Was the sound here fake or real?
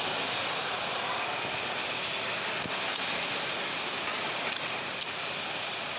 real